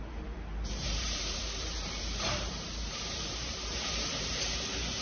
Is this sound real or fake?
fake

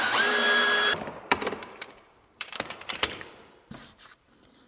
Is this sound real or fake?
fake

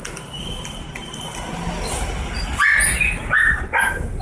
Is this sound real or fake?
real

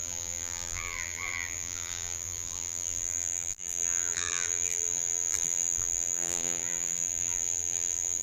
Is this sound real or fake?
fake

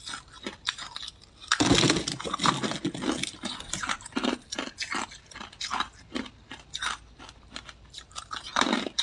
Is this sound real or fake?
real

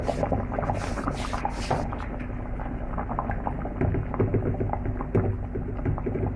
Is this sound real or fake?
real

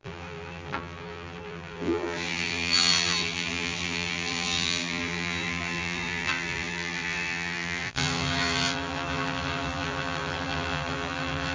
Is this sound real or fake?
fake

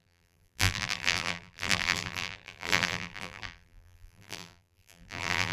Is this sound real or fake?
fake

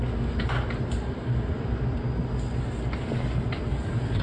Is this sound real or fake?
real